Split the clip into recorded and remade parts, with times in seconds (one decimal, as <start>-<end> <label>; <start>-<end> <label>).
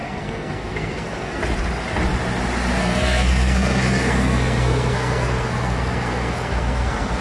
0.0-1.4 remade; 1.4-2.8 recorded; 2.8-7.2 remade